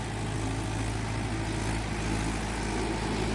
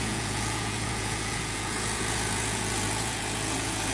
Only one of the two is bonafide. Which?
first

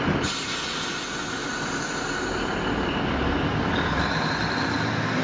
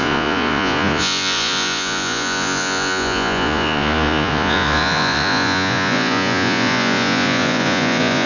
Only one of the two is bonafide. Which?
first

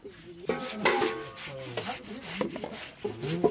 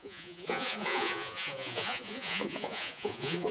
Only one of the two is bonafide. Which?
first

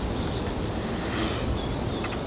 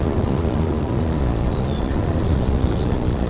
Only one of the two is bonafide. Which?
first